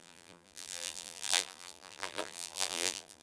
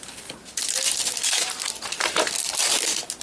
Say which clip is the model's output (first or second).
first